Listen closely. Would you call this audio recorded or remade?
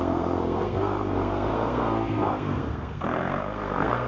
remade